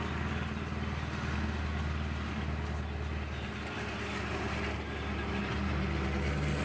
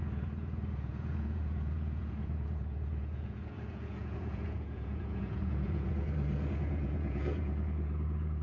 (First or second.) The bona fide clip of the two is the first